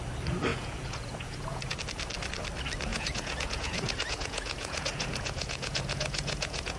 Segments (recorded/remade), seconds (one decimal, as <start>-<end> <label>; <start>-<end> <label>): 0.0-0.5 recorded; 0.5-1.8 remade; 1.8-2.9 recorded; 2.9-6.8 remade